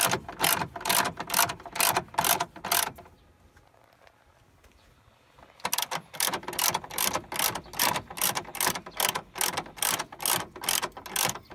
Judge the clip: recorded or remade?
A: recorded